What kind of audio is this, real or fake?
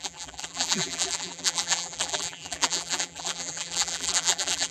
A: fake